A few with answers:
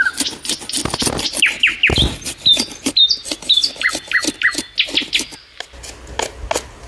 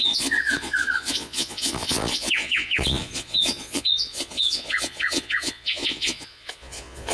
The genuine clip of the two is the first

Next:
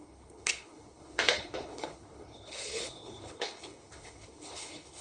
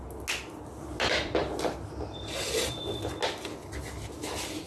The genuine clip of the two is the second